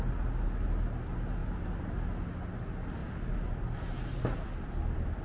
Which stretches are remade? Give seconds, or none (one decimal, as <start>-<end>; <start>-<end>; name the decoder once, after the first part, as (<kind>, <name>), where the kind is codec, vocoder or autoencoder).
none